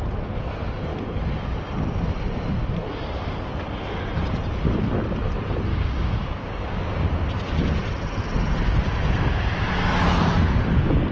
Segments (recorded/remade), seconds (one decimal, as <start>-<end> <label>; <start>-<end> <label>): 0.0-5.7 recorded; 5.7-7.0 remade; 7.0-11.1 recorded

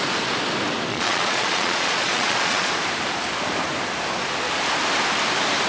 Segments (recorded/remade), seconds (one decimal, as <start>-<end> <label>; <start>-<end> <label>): 0.0-0.9 recorded; 0.9-2.7 remade; 2.7-5.7 recorded

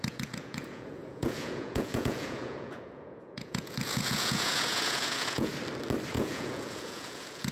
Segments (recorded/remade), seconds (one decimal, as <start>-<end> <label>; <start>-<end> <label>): 0.0-5.5 remade; 5.5-6.1 recorded; 6.1-7.5 remade

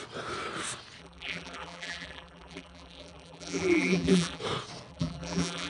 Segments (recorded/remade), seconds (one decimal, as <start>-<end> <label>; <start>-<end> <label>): 0.0-1.0 recorded; 1.0-4.4 remade; 4.4-4.9 recorded; 4.9-5.7 remade